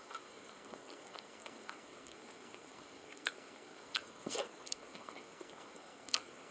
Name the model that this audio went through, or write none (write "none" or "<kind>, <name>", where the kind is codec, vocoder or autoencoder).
codec, SNAC